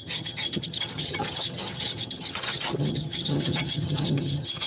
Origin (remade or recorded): remade